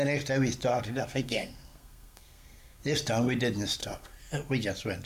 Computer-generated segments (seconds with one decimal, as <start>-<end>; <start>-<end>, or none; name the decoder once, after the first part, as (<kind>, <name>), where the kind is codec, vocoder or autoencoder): 0.7-2.8 (codec, SNAC); 3.8-4.3